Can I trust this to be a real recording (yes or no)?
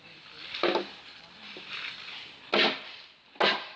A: yes